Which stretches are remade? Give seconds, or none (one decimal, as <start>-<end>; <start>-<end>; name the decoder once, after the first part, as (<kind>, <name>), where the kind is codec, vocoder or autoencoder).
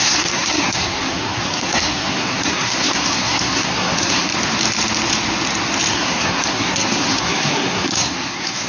0.0-4.3 (codec, SNAC); 5.9-8.7